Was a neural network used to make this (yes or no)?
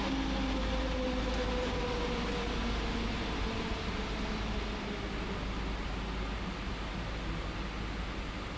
no